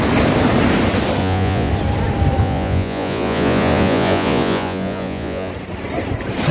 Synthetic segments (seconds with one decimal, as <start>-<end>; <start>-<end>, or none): 1.2-1.7; 2.4-5.5